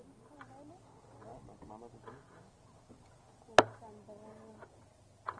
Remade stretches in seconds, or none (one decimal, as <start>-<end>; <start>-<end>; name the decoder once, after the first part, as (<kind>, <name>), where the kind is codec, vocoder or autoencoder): none